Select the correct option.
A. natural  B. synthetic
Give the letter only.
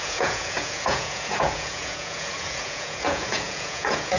B